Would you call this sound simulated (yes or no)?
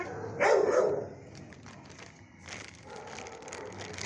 no